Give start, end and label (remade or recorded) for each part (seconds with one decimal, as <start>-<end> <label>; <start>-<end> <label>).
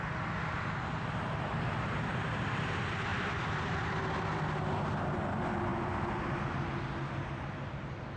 0.0-3.1 recorded; 3.1-3.9 remade; 3.9-8.2 recorded